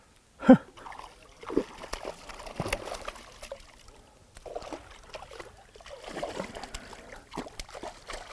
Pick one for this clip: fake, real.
real